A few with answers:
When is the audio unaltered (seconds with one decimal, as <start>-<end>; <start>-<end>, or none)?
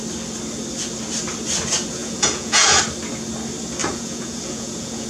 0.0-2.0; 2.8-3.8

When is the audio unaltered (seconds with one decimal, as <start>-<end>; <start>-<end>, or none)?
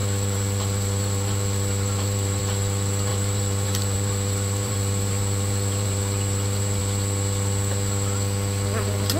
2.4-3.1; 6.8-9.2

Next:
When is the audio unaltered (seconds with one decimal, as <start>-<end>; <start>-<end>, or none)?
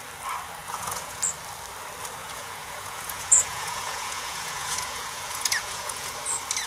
0.0-0.6; 1.2-2.2; 6.2-6.7